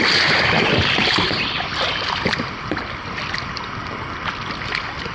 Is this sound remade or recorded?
recorded